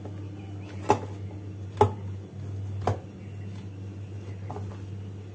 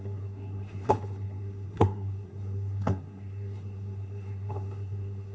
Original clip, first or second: first